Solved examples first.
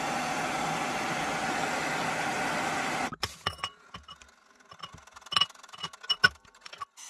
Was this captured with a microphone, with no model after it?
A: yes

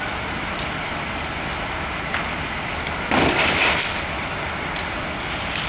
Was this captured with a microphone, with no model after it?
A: yes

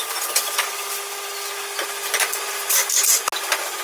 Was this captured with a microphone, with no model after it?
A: yes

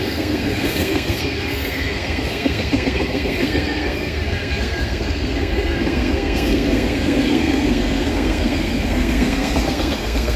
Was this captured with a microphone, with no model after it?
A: no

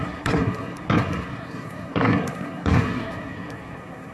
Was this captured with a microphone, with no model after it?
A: no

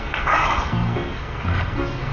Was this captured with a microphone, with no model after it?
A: no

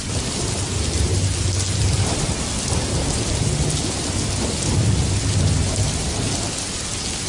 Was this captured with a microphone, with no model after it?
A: yes